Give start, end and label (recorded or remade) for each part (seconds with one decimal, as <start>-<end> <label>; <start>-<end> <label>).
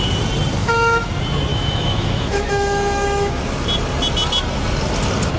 0.0-0.6 recorded; 0.6-1.1 remade; 1.1-1.5 recorded; 1.5-3.4 remade; 3.4-5.4 recorded